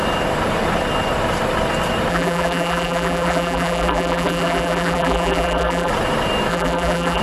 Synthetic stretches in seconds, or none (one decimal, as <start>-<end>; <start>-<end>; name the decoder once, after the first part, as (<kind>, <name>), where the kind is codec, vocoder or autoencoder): 2.1-5.9 (vocoder, BigVGAN v2); 6.5-7.2